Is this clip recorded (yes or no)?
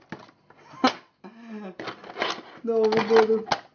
yes